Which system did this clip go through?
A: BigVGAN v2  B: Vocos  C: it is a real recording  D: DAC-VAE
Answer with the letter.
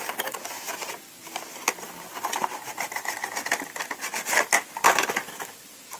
C